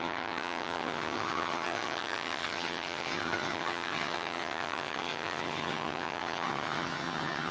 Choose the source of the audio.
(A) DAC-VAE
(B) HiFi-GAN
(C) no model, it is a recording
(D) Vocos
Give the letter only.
B